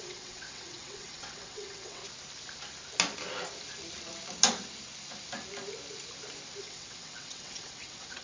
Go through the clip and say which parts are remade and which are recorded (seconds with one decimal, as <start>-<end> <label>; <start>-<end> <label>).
0.0-2.0 remade; 2.0-6.6 recorded; 6.6-8.2 remade